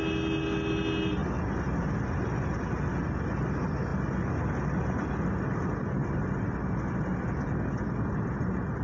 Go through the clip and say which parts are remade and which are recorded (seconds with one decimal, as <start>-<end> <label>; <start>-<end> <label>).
0.0-8.8 recorded